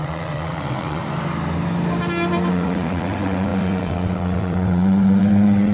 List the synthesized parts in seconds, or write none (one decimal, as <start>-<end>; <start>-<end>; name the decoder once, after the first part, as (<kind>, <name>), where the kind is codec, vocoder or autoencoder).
0.0-1.0 (vocoder, WaveNeXt); 2.5-5.7